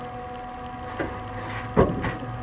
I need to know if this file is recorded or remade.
recorded